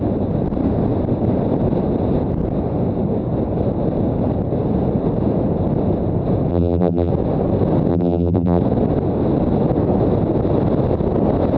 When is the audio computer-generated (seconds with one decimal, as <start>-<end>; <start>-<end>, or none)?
6.5-7.1; 7.9-8.6